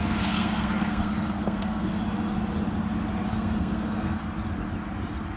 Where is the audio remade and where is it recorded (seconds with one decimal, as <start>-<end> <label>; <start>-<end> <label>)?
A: 0.0-1.9 remade; 1.9-3.3 recorded; 3.3-4.2 remade; 4.2-5.4 recorded